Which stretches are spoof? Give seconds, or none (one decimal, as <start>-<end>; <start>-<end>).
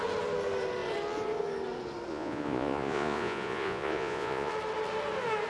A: 2.1-4.5